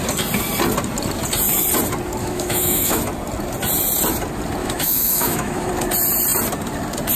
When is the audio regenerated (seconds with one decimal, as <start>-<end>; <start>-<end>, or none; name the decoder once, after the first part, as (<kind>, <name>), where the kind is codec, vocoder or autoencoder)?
2.2-3.0 (autoencoder, DAC-VAE); 4.6-5.7